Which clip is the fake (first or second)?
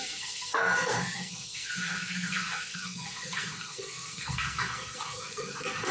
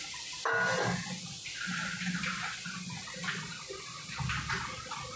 first